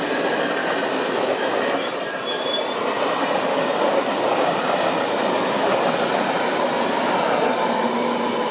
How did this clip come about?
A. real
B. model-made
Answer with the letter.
A